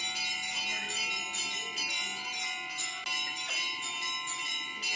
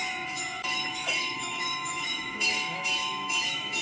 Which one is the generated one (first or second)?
second